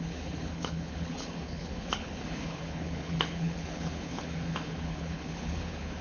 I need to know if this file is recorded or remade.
remade